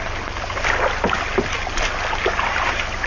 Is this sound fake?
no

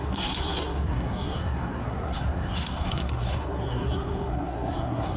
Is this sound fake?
yes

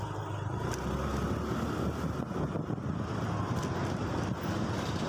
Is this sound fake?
no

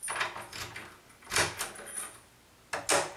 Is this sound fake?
no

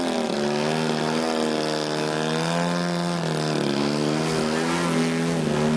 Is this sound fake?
no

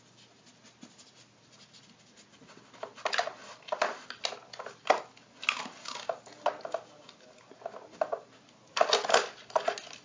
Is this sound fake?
no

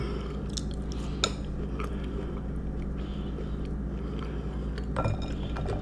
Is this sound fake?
no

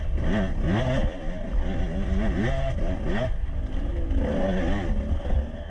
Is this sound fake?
no